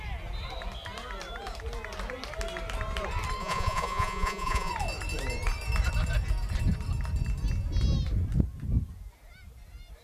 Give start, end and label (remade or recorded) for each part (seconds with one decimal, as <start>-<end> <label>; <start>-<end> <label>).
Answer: 0.0-3.4 recorded; 3.4-4.7 remade; 4.7-10.0 recorded